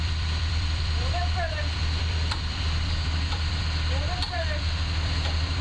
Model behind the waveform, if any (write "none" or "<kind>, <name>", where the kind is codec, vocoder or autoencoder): vocoder, BigVGAN v2